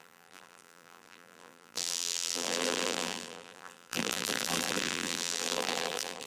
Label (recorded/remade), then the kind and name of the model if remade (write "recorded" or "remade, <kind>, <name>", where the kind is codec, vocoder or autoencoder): remade, vocoder, BigVGAN v2